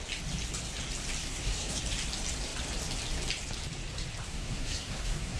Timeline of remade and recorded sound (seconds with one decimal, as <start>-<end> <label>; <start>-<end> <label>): 0.0-1.2 recorded; 1.2-1.8 remade; 1.8-4.3 recorded; 4.3-5.4 remade